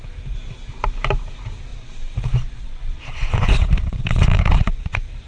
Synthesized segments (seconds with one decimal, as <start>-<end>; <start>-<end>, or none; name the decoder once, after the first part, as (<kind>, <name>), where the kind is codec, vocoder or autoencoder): 1.7-5.3 (vocoder, Vocos)